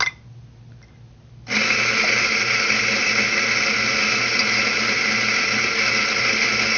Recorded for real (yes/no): yes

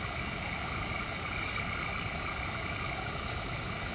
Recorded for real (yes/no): yes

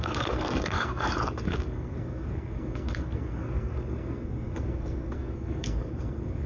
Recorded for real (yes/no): no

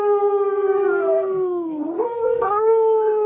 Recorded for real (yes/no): no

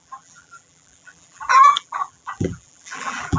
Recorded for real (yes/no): no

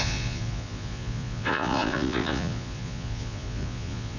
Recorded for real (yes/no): no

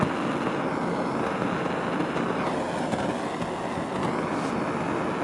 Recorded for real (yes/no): yes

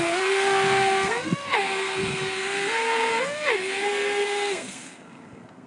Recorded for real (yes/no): no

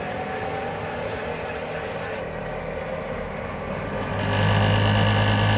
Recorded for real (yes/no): yes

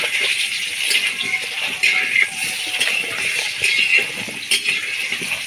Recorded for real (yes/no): yes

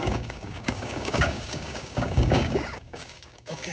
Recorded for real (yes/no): no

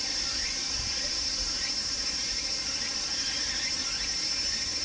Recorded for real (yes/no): yes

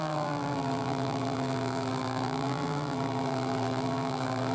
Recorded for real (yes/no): no